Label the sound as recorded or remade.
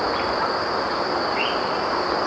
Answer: recorded